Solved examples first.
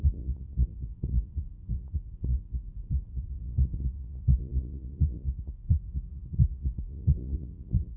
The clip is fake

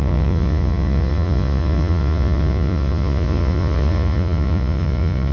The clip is fake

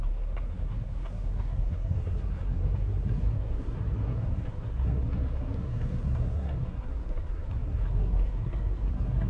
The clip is fake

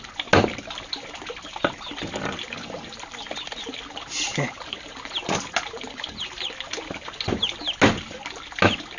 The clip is real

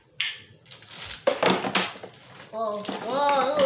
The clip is real